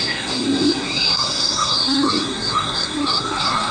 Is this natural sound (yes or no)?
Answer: no